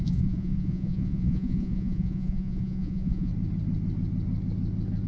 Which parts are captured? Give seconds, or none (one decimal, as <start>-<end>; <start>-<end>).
3.3-5.1